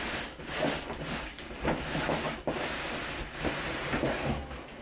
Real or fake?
real